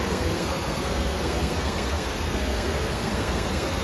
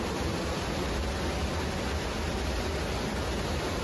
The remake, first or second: first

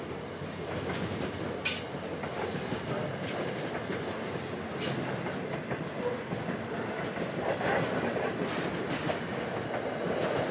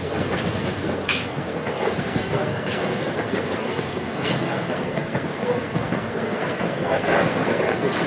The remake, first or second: second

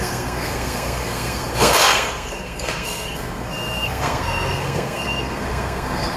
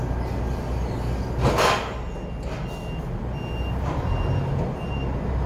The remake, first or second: first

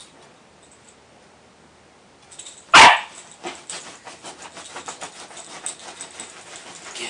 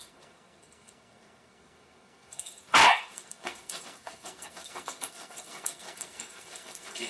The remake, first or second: second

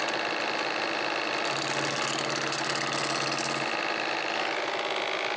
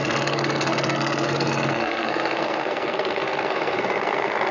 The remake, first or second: second